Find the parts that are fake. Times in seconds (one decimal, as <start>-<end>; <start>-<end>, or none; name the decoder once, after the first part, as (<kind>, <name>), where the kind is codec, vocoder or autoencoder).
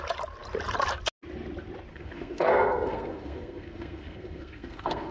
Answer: 1.9-5.1 (codec, SNAC)